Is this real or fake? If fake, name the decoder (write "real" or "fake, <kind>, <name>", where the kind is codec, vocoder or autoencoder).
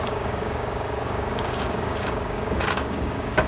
fake, codec, DAC